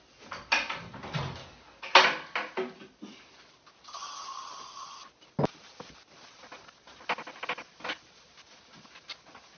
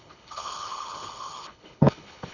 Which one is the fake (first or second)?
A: second